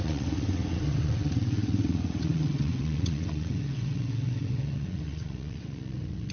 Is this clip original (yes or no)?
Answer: no